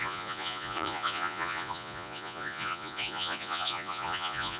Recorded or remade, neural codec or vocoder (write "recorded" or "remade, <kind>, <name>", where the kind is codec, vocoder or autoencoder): remade, vocoder, Vocos